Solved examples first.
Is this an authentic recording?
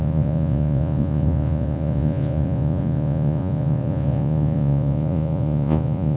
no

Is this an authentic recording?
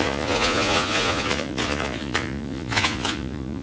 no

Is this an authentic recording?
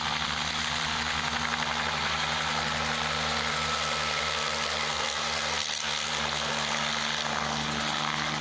yes